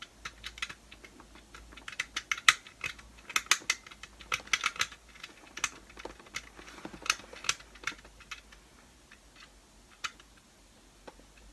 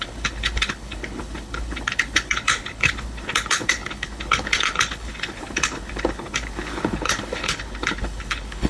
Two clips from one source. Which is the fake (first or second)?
second